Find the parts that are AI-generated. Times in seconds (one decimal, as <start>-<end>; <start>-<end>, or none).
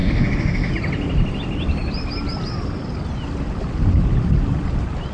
0.0-0.7